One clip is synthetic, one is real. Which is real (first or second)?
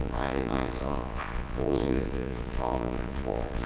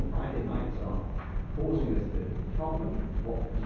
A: second